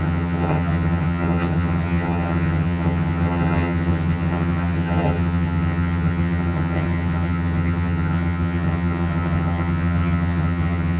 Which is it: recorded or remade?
remade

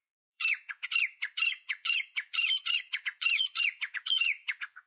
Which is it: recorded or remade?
remade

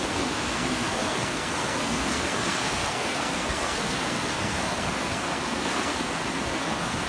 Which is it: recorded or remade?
remade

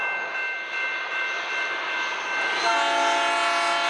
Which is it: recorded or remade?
recorded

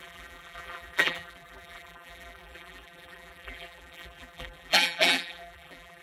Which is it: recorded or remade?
remade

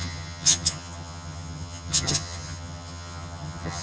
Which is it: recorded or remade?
remade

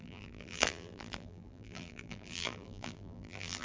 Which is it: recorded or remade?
remade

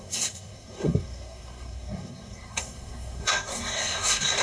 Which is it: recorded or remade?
remade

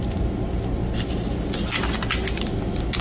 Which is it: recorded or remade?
recorded